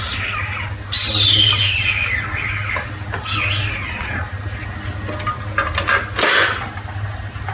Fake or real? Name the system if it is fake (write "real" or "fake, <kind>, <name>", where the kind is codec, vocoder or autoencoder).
real